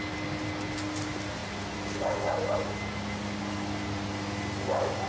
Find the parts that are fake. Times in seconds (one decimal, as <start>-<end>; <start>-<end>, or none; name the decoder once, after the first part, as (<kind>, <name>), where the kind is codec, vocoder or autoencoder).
none